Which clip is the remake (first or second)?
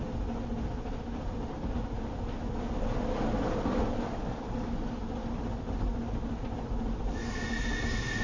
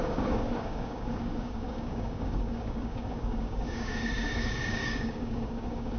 second